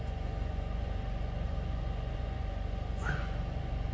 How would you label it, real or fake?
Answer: fake